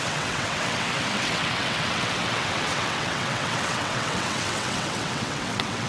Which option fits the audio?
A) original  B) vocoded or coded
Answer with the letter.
B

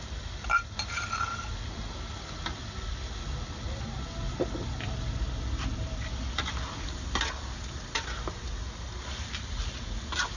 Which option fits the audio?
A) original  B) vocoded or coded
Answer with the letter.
A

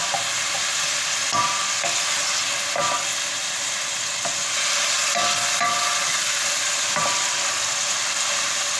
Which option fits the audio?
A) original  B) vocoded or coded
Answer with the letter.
A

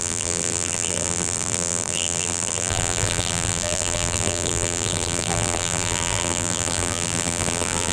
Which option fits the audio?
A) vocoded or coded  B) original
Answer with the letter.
A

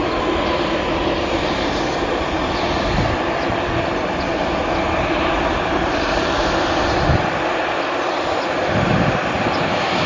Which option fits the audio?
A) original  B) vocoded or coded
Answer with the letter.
A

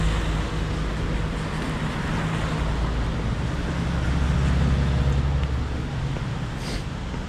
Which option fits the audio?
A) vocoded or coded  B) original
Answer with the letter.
B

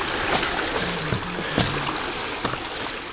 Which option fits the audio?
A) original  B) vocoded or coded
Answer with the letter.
A